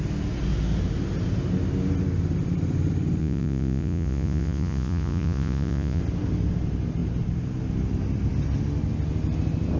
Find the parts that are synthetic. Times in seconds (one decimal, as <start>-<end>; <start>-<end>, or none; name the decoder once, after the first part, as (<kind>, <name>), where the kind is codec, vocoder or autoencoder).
3.2-6.0 (vocoder, Vocos)